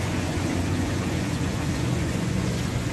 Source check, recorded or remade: remade